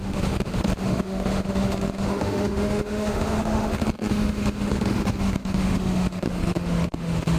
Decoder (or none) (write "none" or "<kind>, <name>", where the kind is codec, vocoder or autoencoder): autoencoder, DAC-VAE